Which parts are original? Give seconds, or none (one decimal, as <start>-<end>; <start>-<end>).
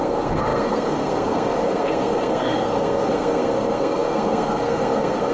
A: none